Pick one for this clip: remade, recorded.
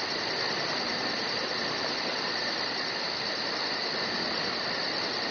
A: recorded